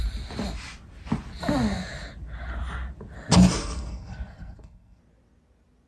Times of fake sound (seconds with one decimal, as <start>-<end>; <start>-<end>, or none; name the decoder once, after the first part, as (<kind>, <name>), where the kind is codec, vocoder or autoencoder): 3.6-5.0 (codec, SNAC)